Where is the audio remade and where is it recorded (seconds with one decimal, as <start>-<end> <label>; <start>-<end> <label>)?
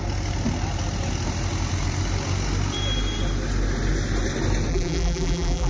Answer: 0.0-4.7 recorded; 4.7-5.7 remade